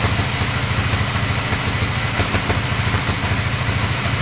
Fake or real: real